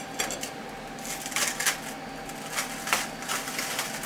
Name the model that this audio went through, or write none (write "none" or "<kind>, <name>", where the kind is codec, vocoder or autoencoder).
none